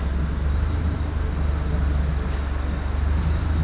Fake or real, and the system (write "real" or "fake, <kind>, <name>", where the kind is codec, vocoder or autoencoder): real